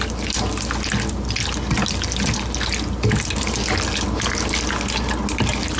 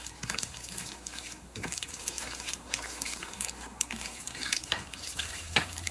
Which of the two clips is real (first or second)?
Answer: first